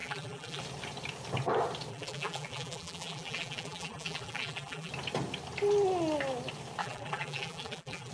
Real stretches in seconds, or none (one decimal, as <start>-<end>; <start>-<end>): 0.6-1.9; 4.9-6.8